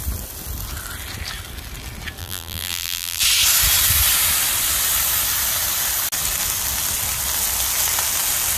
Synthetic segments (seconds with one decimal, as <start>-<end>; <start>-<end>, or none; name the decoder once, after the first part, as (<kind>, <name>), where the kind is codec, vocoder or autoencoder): 2.2-3.2 (vocoder, BigVGAN v2)